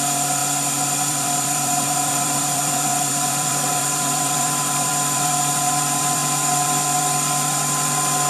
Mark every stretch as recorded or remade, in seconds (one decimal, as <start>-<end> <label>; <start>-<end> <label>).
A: 0.0-0.4 remade; 0.4-1.1 recorded; 1.1-8.3 remade